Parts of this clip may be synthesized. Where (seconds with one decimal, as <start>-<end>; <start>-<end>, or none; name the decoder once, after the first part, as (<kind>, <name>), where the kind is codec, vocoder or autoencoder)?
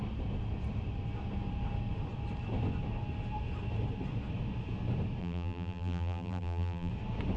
5.2-6.9 (vocoder, BigVGAN v2)